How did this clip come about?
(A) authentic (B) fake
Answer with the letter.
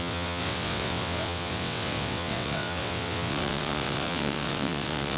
B